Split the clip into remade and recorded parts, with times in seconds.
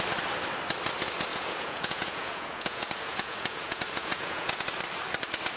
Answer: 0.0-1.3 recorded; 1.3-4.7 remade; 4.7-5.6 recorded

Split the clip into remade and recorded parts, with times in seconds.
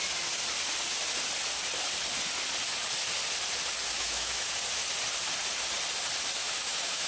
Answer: 0.0-3.9 recorded; 3.9-4.4 remade; 4.4-6.4 recorded; 6.4-7.1 remade